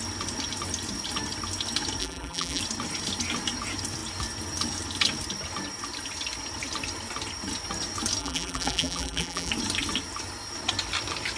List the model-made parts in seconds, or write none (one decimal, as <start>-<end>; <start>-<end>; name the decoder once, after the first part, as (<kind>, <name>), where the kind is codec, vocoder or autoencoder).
2.0-2.6 (vocoder, BigVGAN v2); 8.2-9.5